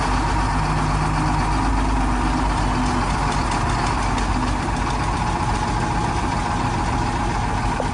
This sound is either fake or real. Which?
real